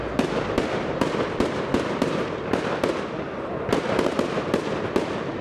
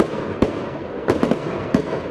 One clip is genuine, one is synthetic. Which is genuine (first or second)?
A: first